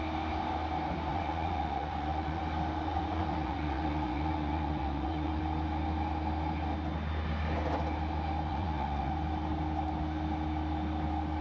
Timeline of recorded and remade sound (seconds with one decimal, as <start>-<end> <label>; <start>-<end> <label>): 0.0-1.1 recorded; 1.1-2.4 remade; 2.4-2.9 recorded; 2.9-5.4 remade; 5.4-8.5 recorded; 8.5-9.1 remade; 9.1-11.4 recorded